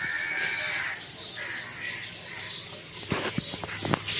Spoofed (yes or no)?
no